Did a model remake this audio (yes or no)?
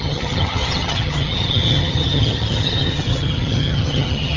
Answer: yes